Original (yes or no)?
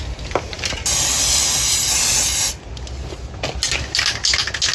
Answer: yes